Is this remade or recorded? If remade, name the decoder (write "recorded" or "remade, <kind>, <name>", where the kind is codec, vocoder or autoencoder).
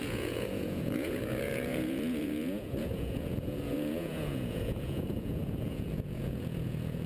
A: remade, vocoder, Vocos